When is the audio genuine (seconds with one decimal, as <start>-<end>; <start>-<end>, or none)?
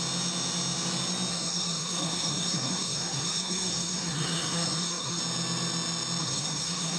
0.0-1.3; 5.2-6.2